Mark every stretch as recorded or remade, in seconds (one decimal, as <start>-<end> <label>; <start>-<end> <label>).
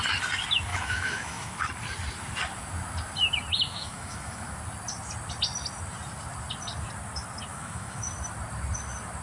0.0-0.7 recorded; 0.7-1.5 remade; 1.5-3.5 recorded; 3.5-4.6 remade; 4.6-7.5 recorded; 7.5-8.1 remade; 8.1-9.2 recorded